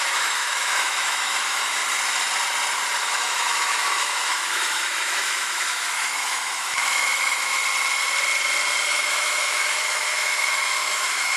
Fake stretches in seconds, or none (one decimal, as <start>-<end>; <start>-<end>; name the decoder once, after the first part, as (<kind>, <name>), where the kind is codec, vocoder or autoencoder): 0.0-1.8 (autoencoder, DAC-VAE); 3.0-7.6; 8.8-11.4